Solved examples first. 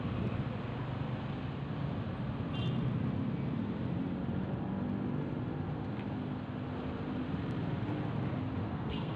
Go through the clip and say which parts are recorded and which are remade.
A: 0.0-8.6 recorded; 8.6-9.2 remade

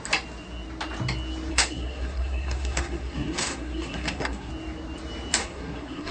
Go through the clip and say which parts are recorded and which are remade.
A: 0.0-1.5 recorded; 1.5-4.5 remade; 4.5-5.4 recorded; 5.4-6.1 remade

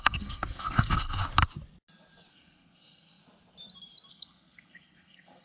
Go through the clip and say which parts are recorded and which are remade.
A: 0.0-1.2 remade; 1.2-2.3 recorded; 2.3-3.2 remade; 3.2-4.1 recorded; 4.1-5.4 remade